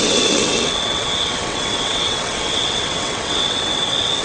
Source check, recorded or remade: remade